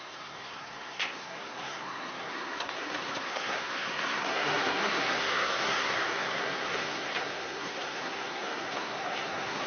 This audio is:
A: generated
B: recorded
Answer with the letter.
A